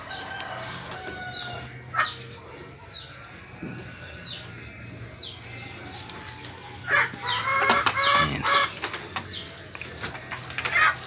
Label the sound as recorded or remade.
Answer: recorded